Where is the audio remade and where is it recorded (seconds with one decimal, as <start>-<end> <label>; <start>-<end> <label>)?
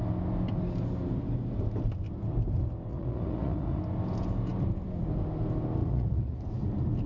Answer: 0.0-2.9 recorded; 2.9-3.8 remade; 3.8-5.8 recorded; 5.8-6.4 remade; 6.4-7.1 recorded